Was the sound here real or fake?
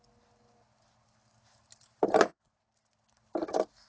real